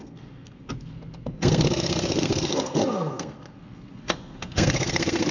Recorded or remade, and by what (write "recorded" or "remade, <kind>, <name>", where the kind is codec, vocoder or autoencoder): remade, codec, SNAC